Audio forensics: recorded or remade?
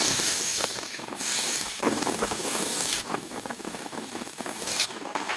remade